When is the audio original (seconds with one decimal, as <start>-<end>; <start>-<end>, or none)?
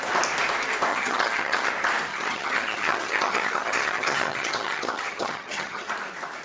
0.0-0.9; 1.7-2.1; 5.9-6.4